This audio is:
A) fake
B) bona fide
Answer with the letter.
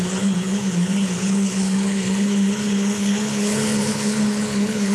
A